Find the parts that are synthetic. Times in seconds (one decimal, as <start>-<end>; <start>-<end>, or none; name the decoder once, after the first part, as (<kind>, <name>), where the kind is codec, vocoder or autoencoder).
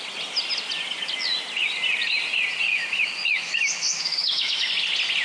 2.7-4.7 (autoencoder, DAC-VAE)